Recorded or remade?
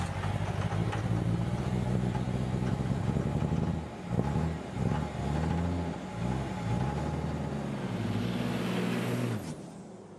recorded